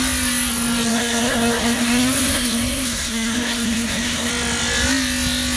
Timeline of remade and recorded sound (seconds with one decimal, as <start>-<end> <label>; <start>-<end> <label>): 0.0-0.9 recorded; 0.9-4.3 remade; 4.3-5.6 recorded